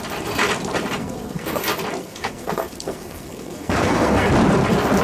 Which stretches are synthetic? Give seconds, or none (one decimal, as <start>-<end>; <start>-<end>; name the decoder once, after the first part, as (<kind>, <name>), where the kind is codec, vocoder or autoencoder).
1.0-1.6 (codec, SNAC); 2.0-4.3